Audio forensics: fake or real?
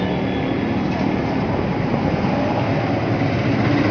real